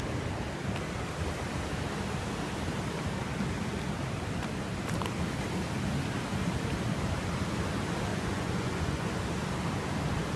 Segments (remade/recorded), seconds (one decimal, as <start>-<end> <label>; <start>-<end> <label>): 0.0-8.1 recorded; 8.1-9.1 remade; 9.1-10.4 recorded